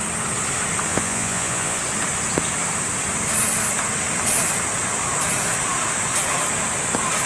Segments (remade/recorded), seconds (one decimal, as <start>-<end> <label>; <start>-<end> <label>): 0.0-0.9 recorded; 0.9-1.8 remade; 1.8-7.3 recorded